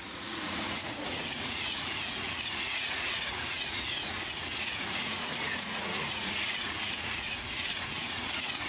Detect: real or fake fake